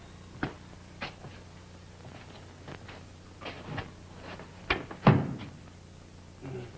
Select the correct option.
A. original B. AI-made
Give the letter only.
A